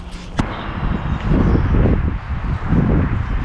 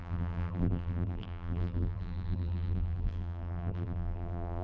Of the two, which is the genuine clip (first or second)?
first